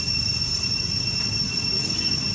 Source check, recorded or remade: recorded